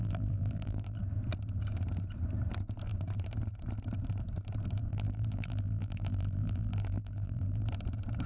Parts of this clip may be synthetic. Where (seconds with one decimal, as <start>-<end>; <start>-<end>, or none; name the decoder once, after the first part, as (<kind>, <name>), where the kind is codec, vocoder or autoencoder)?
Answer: 0.0-1.0 (vocoder, BigVGAN v2); 4.9-7.7